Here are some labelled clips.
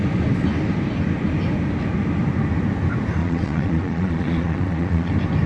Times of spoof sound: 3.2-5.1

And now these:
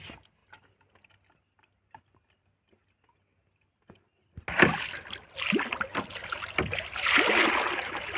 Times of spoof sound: none

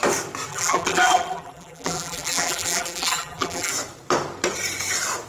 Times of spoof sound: 0.5-3.7

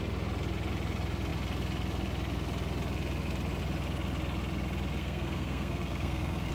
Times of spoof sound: 5.0-6.5

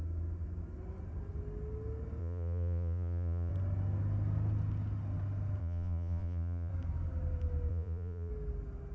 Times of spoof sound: 2.2-3.5; 5.6-6.7; 7.7-8.3